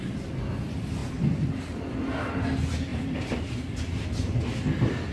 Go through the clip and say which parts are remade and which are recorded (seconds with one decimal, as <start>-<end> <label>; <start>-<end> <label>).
0.0-5.1 recorded